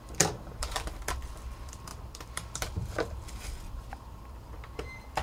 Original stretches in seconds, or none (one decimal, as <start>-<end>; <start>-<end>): none